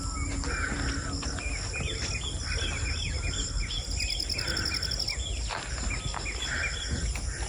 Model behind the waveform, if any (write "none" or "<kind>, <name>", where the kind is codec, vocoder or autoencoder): none